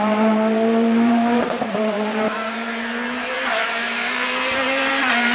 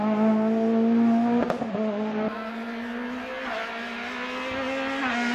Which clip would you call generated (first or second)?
first